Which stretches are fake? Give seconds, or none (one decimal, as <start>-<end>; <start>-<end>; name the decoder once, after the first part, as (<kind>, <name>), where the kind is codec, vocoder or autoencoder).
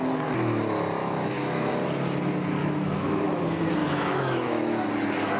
1.0-1.7 (autoencoder, DAC-VAE); 2.6-3.4; 3.8-4.9